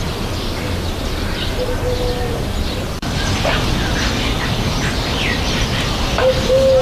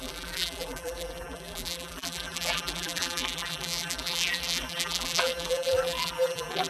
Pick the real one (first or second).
first